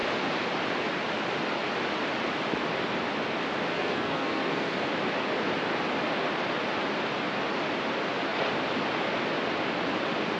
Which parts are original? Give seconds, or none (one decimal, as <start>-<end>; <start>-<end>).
0.0-3.7; 4.9-10.4